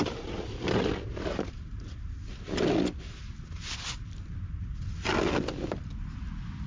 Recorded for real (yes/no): yes